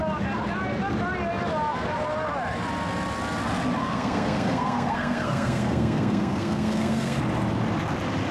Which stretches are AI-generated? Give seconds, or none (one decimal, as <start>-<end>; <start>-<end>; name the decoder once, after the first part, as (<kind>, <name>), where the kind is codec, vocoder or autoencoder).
3.8-7.2 (codec, SNAC)